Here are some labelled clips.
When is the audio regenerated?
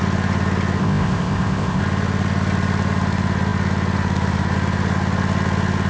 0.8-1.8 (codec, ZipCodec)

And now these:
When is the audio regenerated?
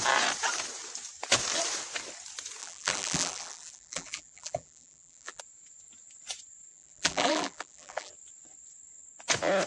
2.6-5.4 (vocoder, BigVGAN v2); 6.7-8.1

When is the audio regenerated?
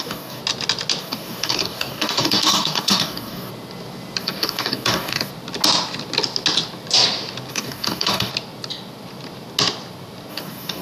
0.0-0.4 (codec, DAC); 1.0-3.5; 4.2-5.3; 7.5-8.3; 10.3-10.8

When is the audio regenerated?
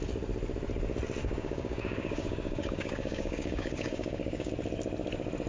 1.2-4.5 (codec, DAC)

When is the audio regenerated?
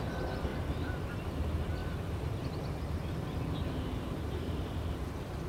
1.8-2.8 (vocoder, BigVGAN v2)